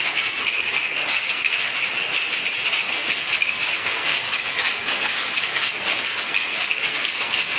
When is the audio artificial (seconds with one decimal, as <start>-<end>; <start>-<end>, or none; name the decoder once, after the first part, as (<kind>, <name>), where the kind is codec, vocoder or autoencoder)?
0.0-1.7 (codec, SNAC); 2.9-7.6